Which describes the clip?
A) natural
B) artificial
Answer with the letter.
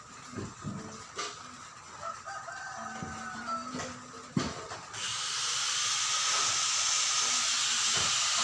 A